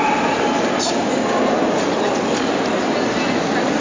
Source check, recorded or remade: recorded